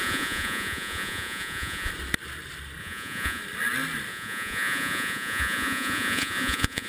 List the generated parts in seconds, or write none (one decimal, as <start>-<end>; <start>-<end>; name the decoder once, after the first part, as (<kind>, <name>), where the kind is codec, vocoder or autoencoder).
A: 0.0-1.9 (vocoder, Vocos); 2.8-3.4; 4.1-6.9